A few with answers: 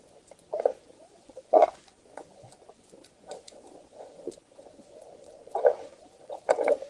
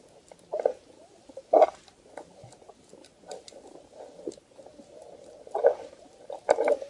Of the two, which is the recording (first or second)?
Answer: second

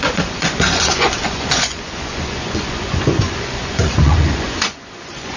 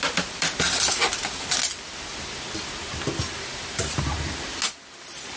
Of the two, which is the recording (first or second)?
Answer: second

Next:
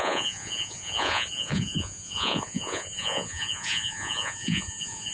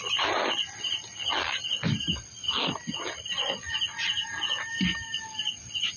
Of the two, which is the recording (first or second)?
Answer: second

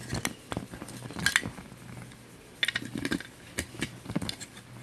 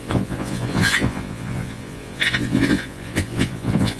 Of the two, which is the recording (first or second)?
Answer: first